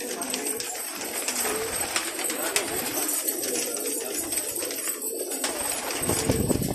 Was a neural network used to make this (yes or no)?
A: no